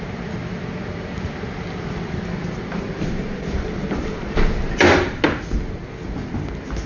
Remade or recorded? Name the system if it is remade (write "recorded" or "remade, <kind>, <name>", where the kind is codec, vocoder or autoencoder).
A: recorded